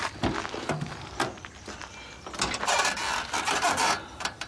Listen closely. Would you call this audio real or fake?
real